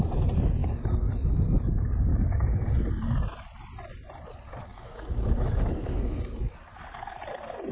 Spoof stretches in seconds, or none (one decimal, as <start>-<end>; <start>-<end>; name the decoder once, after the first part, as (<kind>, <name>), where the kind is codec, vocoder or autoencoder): 0.6-1.1 (codec, DAC); 2.1-2.9; 4.7-6.1